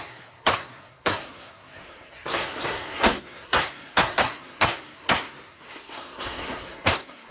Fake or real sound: fake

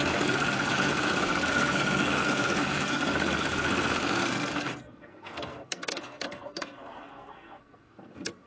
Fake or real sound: fake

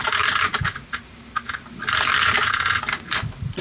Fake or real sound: real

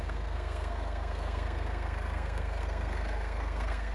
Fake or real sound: fake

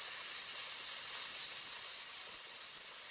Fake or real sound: real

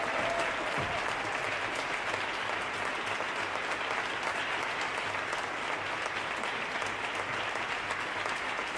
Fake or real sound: real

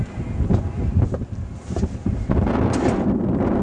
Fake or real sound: real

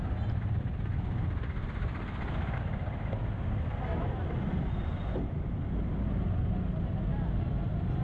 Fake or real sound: real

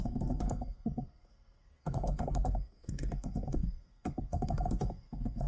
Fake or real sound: fake